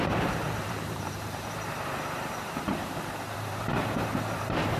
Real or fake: fake